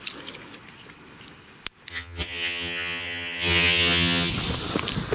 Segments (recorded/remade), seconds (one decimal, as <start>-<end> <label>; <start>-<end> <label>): 0.0-1.9 recorded; 1.9-4.3 remade; 4.3-5.1 recorded